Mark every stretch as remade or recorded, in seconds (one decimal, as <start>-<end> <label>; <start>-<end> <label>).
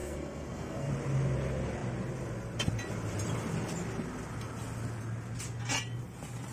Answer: 0.0-0.9 remade; 0.9-6.5 recorded